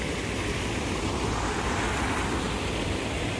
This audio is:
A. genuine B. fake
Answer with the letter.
B